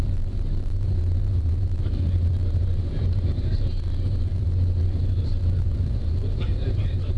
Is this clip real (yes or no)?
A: no